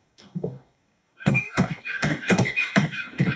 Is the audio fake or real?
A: fake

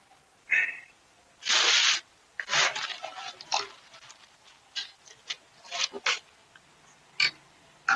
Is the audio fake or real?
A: real